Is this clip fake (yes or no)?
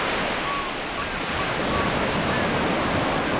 no